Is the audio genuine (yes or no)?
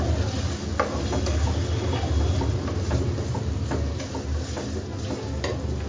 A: yes